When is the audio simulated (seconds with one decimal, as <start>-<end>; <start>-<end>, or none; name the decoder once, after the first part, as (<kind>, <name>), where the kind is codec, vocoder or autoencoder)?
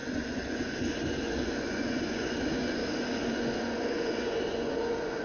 0.0-2.8 (vocoder, Vocos); 3.3-5.2